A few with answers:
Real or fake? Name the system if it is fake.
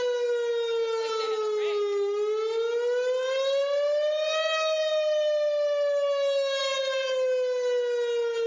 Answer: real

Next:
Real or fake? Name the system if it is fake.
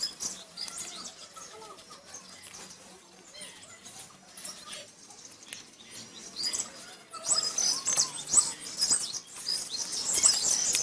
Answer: real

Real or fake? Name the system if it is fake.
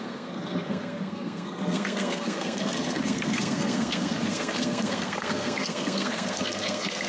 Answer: fake, codec, SNAC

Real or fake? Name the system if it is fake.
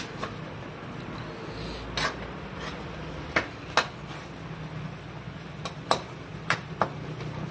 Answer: real